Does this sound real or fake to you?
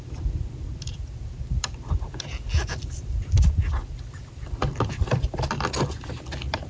fake